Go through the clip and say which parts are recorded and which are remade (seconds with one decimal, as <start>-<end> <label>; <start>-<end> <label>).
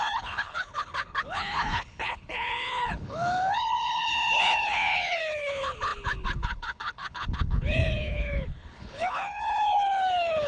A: 0.0-10.5 remade